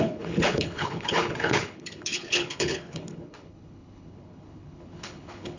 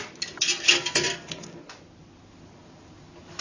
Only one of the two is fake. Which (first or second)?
first